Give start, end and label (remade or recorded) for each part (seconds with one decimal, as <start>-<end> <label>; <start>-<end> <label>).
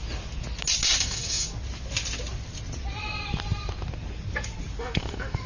0.0-1.0 recorded; 1.0-1.5 remade; 1.5-4.8 recorded; 4.8-5.5 remade